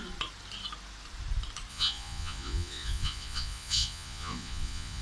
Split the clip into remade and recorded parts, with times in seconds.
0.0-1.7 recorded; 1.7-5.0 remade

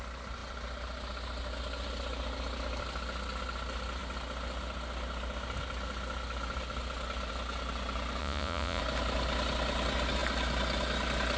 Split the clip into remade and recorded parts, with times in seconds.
0.0-8.2 recorded; 8.2-8.8 remade; 8.8-11.4 recorded

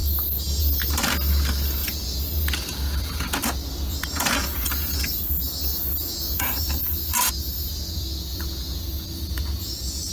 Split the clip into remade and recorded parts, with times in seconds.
0.0-1.8 recorded; 1.8-5.0 remade; 5.0-5.7 recorded; 5.7-7.3 remade; 7.3-8.3 recorded; 8.3-10.1 remade